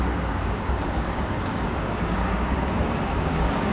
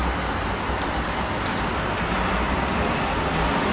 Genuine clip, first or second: second